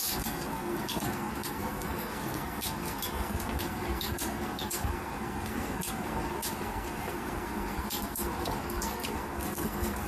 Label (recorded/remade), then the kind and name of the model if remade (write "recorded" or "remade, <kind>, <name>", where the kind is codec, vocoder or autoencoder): remade, codec, SNAC